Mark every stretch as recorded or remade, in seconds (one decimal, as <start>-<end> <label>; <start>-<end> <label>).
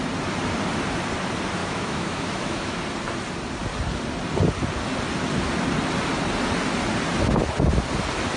0.0-1.6 recorded; 1.6-2.8 remade; 2.8-8.4 recorded